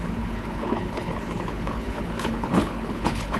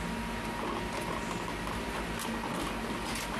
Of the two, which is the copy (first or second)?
first